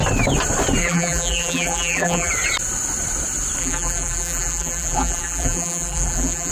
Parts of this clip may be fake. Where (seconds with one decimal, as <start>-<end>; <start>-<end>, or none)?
0.8-2.3; 3.6-6.5